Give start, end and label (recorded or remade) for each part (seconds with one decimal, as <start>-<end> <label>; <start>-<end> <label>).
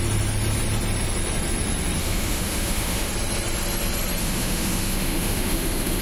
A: 0.0-2.0 recorded; 2.0-3.1 remade; 3.1-4.2 recorded; 4.2-6.0 remade